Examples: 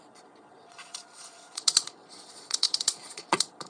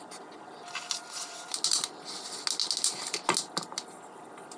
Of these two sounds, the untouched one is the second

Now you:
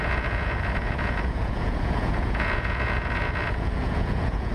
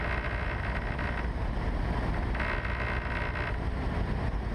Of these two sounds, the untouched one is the second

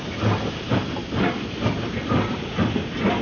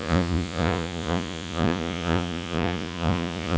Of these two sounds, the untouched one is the first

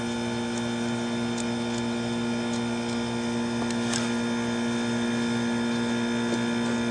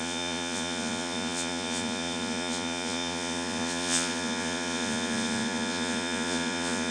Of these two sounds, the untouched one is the first